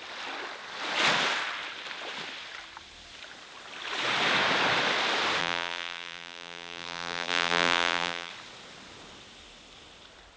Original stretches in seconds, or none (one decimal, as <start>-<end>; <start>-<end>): 0.0-5.4; 8.3-10.4